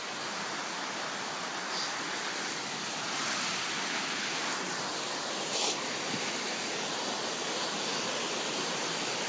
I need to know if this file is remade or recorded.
recorded